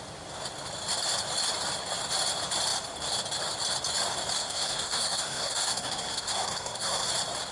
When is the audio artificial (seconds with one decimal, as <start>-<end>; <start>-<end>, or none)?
4.4-7.1